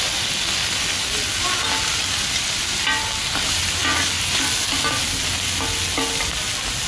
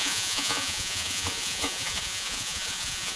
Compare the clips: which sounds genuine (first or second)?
first